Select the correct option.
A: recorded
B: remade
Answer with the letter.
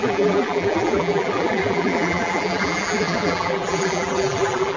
B